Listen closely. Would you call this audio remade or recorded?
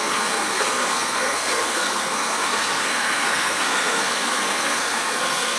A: remade